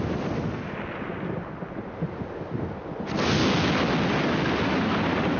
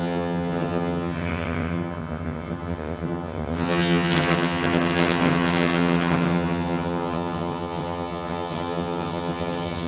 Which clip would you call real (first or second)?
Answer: first